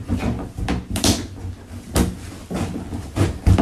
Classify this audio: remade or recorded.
recorded